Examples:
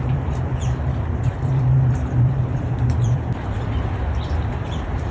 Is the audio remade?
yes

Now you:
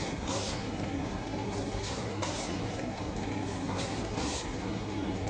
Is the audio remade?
yes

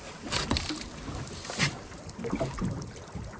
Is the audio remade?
no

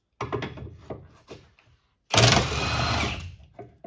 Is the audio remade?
no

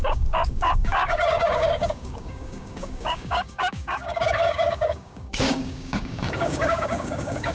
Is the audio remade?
yes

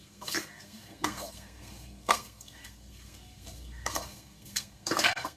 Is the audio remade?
yes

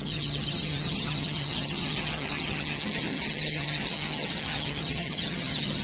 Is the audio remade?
yes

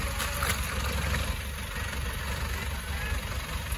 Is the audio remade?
no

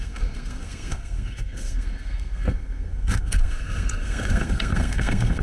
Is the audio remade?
yes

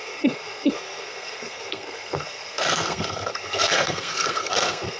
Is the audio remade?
yes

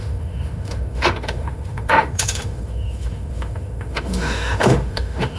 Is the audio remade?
yes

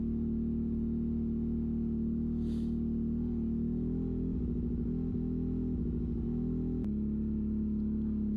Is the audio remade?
no